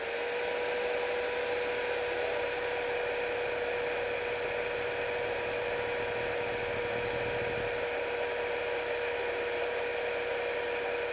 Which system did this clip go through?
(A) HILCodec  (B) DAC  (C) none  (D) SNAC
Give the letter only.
C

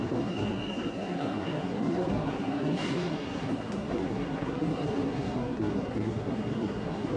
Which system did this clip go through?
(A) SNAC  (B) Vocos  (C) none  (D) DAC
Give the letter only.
A